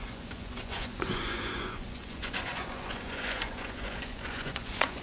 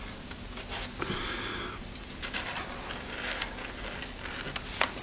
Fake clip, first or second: first